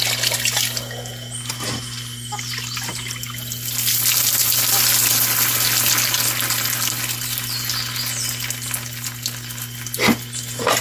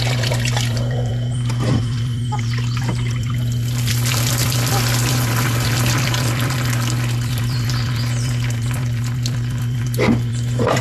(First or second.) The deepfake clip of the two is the second